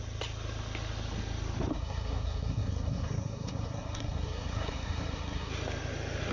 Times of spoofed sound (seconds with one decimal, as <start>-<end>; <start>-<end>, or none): 1.7-5.5